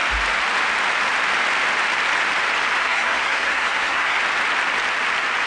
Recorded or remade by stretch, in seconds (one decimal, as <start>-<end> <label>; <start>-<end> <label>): 0.0-2.8 recorded; 2.8-4.2 remade; 4.2-5.5 recorded